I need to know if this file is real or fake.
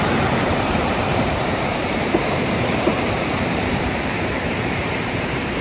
fake